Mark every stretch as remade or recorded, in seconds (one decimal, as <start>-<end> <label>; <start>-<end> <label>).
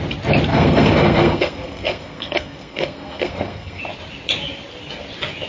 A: 0.0-0.5 recorded; 0.5-3.8 remade; 3.8-5.5 recorded